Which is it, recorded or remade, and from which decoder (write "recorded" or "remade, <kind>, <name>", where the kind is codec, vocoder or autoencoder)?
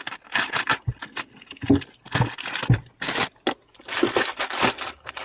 recorded